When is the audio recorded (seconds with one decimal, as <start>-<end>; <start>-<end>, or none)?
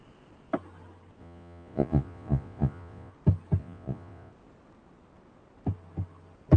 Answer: 0.0-1.2; 3.1-3.6; 4.3-6.6